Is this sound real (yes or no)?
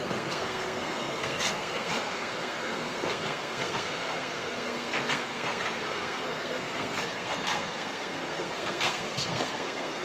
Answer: no